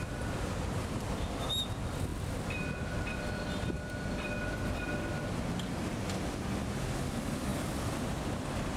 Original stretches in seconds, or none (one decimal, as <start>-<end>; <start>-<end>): 0.0-8.8